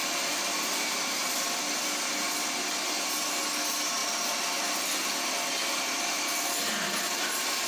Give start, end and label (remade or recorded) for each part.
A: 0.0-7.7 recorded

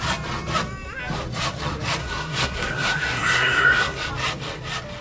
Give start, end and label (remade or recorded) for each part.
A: 0.0-2.0 recorded; 2.0-4.1 remade; 4.1-5.0 recorded

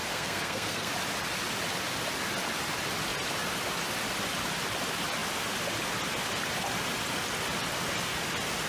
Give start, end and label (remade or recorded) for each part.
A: 0.0-0.9 remade; 0.9-8.7 recorded

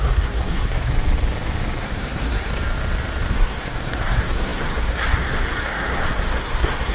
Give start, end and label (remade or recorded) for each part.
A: 0.0-0.9 remade; 0.9-1.8 recorded; 1.8-2.5 remade; 2.5-3.3 recorded; 3.3-6.9 remade

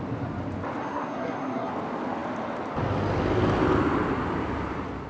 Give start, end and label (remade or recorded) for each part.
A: 0.0-0.8 recorded; 0.8-1.7 remade; 1.7-5.1 recorded

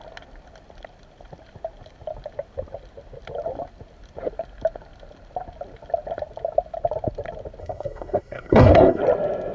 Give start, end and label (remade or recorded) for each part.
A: 0.0-7.6 recorded; 7.6-9.0 remade; 9.0-9.5 recorded